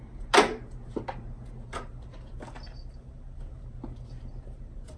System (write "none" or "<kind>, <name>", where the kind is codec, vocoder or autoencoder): none